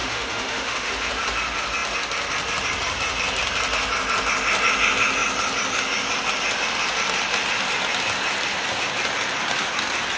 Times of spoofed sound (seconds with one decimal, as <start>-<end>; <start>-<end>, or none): 0.0-0.9